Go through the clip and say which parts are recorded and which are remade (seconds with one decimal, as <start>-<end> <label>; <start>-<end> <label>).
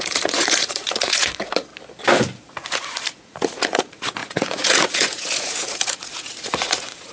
0.0-1.7 remade; 1.7-2.4 recorded; 2.4-7.1 remade